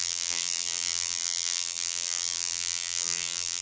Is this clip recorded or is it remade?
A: remade